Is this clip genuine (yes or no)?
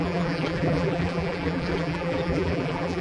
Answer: no